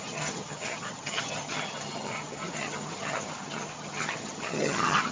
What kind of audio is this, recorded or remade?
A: remade